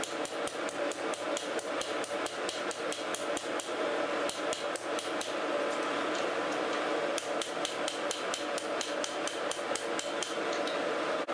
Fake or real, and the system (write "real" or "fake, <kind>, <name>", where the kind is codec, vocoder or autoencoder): real